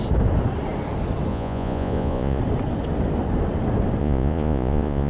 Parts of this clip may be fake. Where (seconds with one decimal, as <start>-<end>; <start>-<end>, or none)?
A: 1.3-2.4; 4.0-5.1